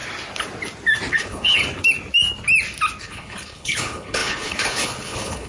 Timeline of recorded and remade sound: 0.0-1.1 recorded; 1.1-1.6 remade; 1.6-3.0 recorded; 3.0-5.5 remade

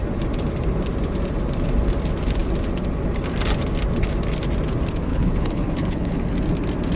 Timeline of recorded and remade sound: 0.0-5.1 recorded; 5.1-6.1 remade; 6.1-7.0 recorded

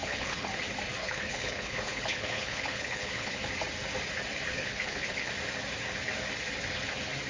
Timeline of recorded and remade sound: 0.0-0.5 remade; 0.5-1.0 recorded; 1.0-3.5 remade; 3.5-4.5 recorded; 4.5-5.3 remade; 5.3-7.3 recorded

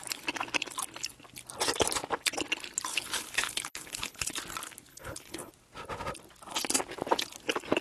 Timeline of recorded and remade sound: 0.0-2.9 recorded; 2.9-4.4 remade; 4.4-4.9 recorded; 4.9-5.5 remade; 5.5-7.8 recorded

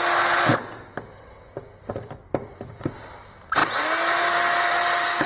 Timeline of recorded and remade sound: 0.0-5.3 recorded

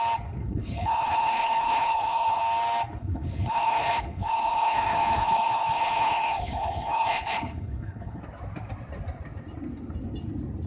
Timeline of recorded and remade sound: 0.0-0.4 recorded; 0.4-2.4 remade; 2.4-3.0 recorded; 3.0-8.2 remade; 8.2-10.7 recorded